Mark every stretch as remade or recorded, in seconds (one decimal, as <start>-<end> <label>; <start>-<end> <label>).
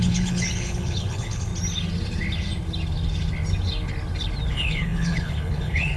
0.0-1.5 remade; 1.5-4.5 recorded; 4.5-6.0 remade